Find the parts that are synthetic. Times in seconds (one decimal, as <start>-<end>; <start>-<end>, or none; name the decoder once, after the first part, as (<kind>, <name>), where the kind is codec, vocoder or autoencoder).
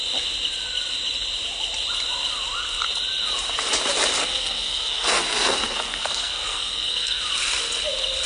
4.2-7.2 (codec, SNAC)